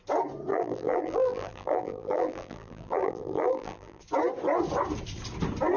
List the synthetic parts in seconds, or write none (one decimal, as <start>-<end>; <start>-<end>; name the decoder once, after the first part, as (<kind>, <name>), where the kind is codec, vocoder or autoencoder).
0.5-4.0 (vocoder, BigVGAN v2)